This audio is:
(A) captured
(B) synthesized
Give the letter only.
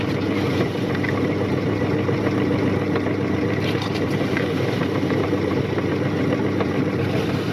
B